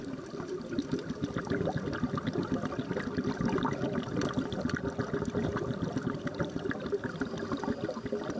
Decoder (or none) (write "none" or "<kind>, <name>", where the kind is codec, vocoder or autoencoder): none